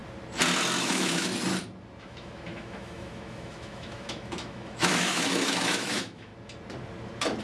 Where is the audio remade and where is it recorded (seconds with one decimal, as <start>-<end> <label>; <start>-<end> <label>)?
0.0-0.8 recorded; 0.8-1.3 remade; 1.3-2.0 recorded; 2.0-6.3 remade; 6.3-7.4 recorded

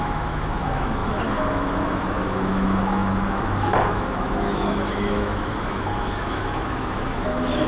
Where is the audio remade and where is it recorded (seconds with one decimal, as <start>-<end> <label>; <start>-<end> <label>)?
0.0-7.7 remade

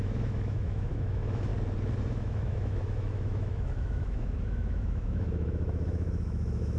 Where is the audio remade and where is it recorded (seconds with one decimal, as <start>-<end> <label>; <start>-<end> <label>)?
0.0-1.5 remade; 1.5-2.0 recorded; 2.0-6.8 remade

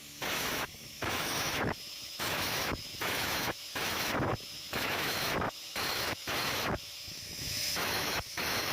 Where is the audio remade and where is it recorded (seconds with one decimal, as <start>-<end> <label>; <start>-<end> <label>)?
0.0-8.7 remade

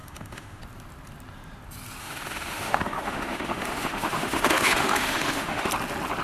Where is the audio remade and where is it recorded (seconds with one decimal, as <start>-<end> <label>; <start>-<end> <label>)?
0.0-0.6 remade; 0.6-2.0 recorded; 2.0-5.7 remade; 5.7-6.2 recorded

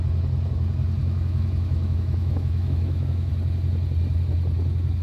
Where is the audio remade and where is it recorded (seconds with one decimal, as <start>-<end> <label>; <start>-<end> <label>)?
0.0-1.0 recorded; 1.0-3.3 remade; 3.3-5.0 recorded